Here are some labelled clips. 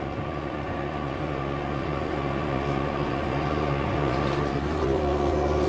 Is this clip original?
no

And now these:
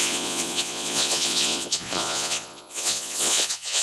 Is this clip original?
no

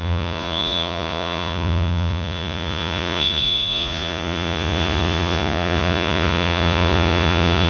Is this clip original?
no